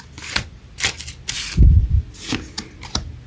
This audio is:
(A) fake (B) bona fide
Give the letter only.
B